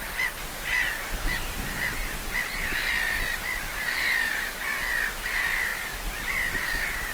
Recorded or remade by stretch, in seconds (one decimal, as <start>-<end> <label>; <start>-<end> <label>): 0.0-7.1 recorded

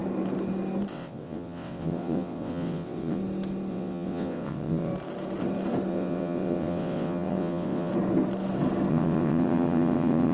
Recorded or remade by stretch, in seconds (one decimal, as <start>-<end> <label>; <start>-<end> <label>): 0.0-0.9 recorded; 0.9-3.2 remade; 3.2-3.7 recorded; 3.7-4.9 remade; 4.9-5.9 recorded; 5.9-7.9 remade; 7.9-8.9 recorded; 8.9-10.3 remade

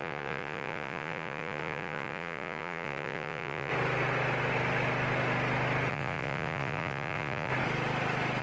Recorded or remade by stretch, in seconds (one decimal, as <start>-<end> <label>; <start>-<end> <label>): 0.0-3.7 remade; 3.7-5.9 recorded; 5.9-7.5 remade; 7.5-8.4 recorded

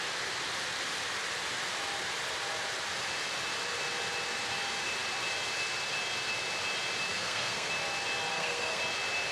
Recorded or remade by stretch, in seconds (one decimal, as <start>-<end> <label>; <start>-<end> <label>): 0.0-7.1 recorded; 7.1-7.7 remade; 7.7-8.3 recorded; 8.3-8.8 remade; 8.8-9.3 recorded

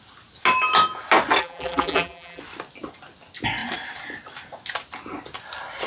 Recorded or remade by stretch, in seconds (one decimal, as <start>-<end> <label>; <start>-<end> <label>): 0.0-1.4 recorded; 1.4-2.4 remade; 2.4-5.9 recorded